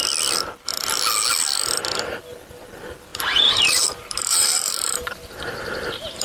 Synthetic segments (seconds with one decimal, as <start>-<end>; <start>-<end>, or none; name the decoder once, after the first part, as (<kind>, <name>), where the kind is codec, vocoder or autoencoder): 3.1-5.3 (vocoder, BigVGAN v2)